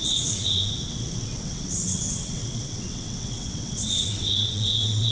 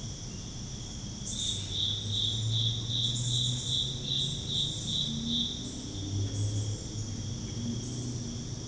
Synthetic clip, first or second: first